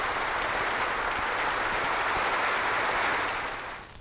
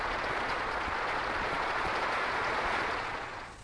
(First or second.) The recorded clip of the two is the first